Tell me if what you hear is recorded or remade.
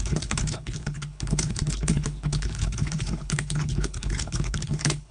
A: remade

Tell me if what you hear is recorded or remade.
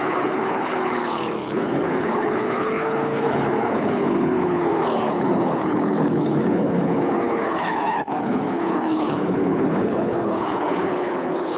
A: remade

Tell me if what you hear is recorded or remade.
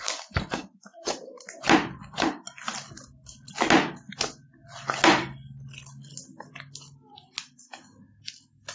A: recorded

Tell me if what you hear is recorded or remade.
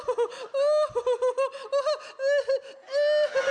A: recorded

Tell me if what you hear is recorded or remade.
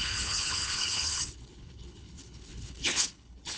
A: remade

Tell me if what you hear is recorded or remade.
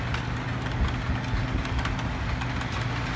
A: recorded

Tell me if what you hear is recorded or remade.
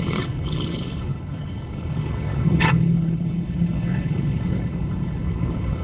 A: remade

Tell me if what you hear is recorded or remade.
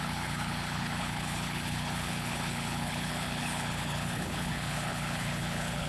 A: remade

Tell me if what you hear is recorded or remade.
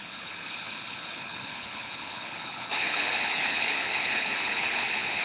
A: remade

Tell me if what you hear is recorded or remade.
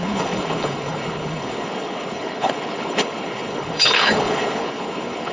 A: remade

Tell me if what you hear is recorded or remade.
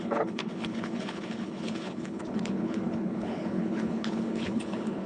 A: remade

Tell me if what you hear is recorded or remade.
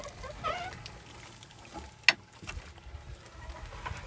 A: recorded